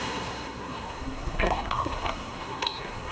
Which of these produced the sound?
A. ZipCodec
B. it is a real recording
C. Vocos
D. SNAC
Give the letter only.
D